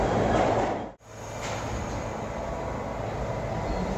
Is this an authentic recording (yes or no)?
yes